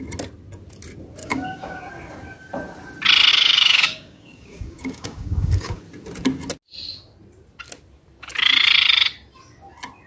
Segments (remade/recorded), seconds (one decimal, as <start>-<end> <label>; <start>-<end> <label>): 0.0-1.2 recorded; 1.2-1.9 remade; 1.9-3.3 recorded; 3.3-5.8 remade; 5.8-10.1 recorded